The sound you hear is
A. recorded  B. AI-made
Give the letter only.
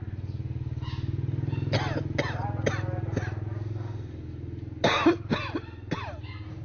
A